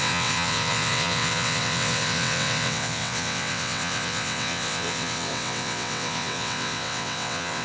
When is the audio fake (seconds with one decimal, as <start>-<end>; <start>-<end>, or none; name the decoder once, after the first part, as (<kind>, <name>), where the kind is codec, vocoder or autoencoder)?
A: 0.0-7.6 (vocoder, WaveNeXt)